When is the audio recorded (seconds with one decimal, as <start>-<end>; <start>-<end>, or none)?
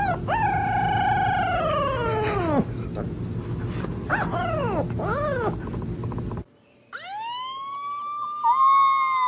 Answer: 0.0-9.3